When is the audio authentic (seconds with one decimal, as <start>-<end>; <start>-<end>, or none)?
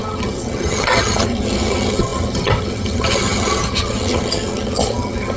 none